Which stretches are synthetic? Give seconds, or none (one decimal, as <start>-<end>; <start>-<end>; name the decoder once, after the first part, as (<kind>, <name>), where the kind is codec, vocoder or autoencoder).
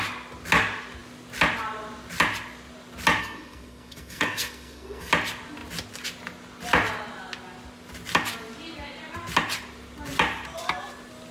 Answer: 3.2-5.1 (codec, SNAC)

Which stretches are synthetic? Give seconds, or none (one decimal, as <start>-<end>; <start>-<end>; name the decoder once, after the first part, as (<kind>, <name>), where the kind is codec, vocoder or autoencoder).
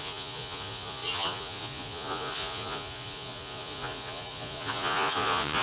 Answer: 0.0-5.6 (vocoder, Vocos)